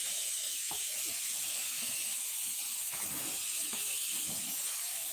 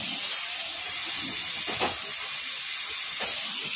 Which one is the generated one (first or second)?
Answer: first